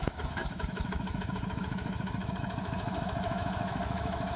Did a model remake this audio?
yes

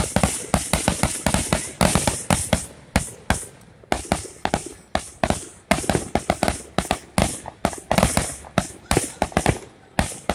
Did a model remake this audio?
no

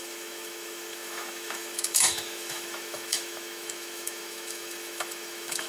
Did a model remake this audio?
yes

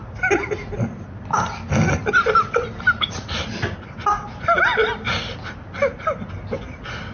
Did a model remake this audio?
no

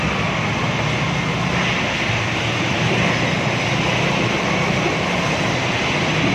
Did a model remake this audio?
no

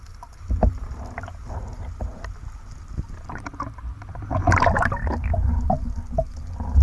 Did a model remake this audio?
no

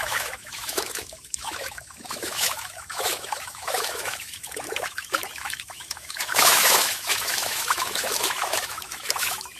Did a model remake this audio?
yes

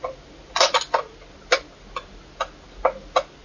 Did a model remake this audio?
no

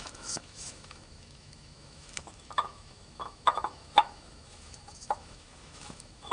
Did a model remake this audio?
yes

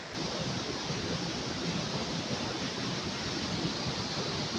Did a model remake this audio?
no